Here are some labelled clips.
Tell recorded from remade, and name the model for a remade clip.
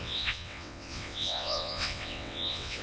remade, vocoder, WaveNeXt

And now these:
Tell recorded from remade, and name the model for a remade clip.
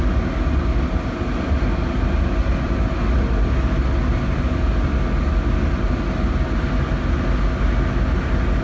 recorded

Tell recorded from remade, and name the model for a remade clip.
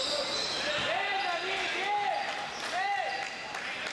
recorded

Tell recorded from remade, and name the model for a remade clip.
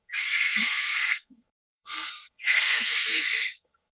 remade, codec, SNAC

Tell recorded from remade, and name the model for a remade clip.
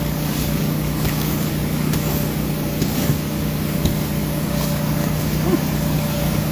remade, codec, DAC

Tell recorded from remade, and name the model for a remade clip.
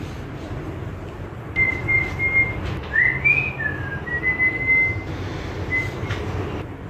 recorded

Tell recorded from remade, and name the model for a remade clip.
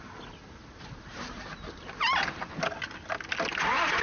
recorded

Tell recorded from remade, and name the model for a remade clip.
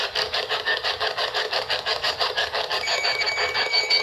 remade, codec, DAC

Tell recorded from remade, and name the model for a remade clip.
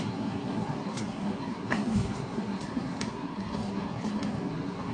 remade, codec, SNAC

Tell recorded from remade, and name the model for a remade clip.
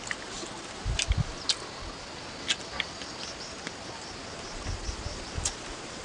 recorded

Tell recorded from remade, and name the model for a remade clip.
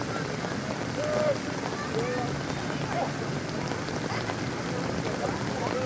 recorded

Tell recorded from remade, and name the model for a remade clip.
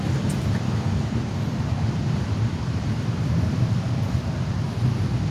remade, vocoder, BigVGAN v2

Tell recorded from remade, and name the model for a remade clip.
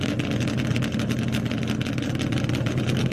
recorded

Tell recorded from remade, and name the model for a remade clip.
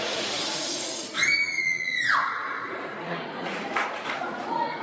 remade, vocoder, Vocos